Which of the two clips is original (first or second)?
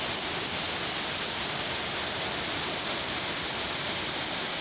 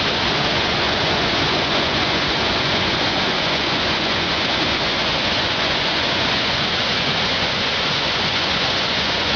first